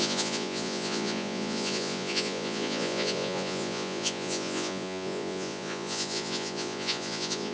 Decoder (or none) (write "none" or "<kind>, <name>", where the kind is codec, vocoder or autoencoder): vocoder, Vocos